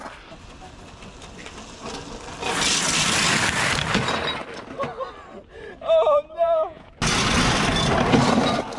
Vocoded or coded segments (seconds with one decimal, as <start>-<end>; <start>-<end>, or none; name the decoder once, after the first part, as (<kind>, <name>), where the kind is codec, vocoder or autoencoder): 6.0-6.9 (vocoder, Vocos)